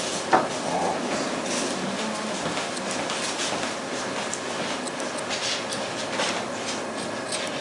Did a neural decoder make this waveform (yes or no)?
no